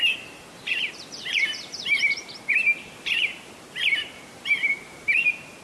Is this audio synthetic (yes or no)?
yes